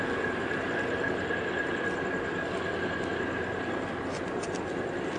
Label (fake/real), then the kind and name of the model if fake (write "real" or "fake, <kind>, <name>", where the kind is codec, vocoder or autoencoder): real